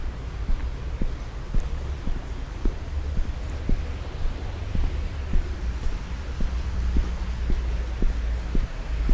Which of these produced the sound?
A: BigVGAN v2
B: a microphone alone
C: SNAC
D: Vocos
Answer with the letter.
B